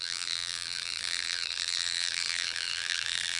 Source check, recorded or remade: remade